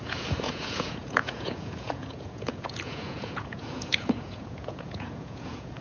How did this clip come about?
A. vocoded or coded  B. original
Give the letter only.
A